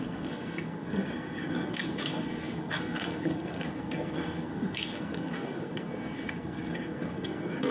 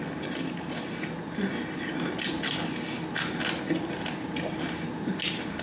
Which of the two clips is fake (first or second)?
first